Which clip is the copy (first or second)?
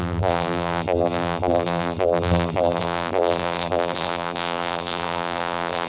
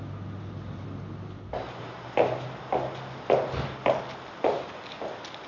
first